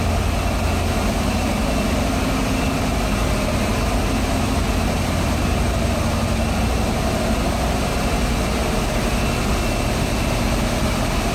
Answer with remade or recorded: recorded